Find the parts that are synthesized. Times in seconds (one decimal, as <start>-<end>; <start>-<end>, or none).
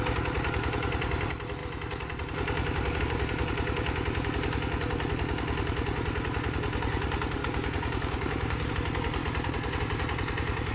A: 7.4-8.7